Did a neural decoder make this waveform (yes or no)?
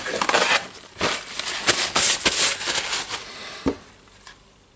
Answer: no